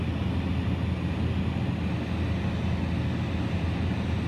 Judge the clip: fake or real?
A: real